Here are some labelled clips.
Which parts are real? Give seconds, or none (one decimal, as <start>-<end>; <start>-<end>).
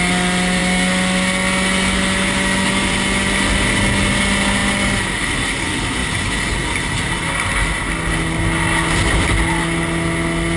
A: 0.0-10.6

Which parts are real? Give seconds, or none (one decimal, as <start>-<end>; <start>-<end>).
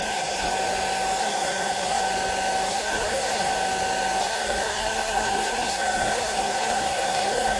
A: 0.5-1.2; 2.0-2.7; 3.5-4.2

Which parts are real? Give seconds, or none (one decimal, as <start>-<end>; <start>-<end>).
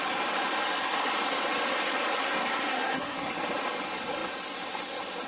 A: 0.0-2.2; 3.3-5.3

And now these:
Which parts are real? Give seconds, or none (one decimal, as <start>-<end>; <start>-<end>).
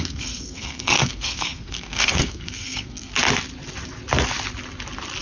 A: 3.1-5.2